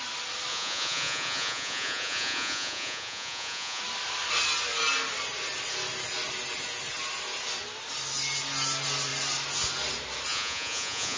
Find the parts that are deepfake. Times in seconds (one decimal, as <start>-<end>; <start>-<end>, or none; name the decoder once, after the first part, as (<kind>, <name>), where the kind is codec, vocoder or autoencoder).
0.5-3.8 (vocoder, Vocos); 10.3-11.2